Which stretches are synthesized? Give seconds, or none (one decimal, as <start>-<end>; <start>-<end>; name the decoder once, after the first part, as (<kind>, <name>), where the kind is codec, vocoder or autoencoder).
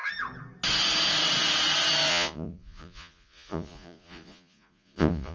2.1-5.3 (vocoder, Vocos)